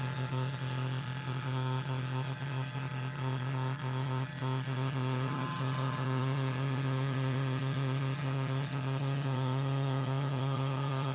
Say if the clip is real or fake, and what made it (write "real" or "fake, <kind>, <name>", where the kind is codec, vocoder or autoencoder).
fake, vocoder, HiFi-GAN